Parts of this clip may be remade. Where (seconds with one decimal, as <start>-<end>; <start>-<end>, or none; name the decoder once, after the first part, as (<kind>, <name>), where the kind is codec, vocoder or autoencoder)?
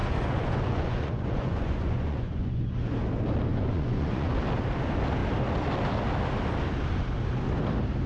0.0-2.7 (vocoder, Vocos); 3.5-4.3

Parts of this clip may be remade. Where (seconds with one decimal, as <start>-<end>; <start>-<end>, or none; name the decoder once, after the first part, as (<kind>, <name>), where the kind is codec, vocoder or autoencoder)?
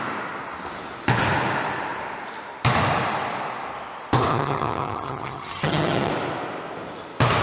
4.3-6.1 (vocoder, HiFi-GAN)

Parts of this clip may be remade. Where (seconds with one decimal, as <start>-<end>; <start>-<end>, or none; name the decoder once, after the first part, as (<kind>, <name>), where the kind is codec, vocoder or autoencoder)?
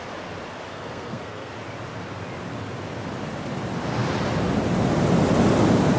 0.7-1.5 (codec, SNAC)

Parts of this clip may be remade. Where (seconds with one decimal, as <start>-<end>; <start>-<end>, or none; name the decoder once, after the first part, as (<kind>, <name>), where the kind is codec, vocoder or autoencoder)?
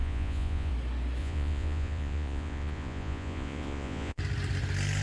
0.0-0.7 (vocoder, Vocos); 1.2-4.2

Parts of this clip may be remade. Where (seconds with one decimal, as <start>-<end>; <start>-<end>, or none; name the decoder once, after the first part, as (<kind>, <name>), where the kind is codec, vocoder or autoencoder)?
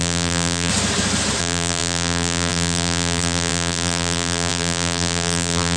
0.0-0.7 (vocoder, BigVGAN v2); 1.4-5.8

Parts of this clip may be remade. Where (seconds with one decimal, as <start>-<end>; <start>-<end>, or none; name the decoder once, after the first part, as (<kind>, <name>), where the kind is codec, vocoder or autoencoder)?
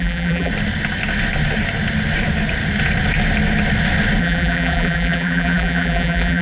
0.0-0.5 (vocoder, BigVGAN v2); 4.2-6.4